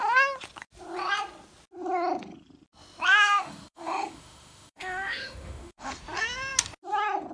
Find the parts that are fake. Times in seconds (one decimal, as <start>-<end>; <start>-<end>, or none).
3.1-5.9